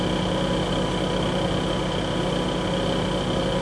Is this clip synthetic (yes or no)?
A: no